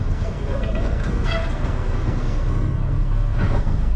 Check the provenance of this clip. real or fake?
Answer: fake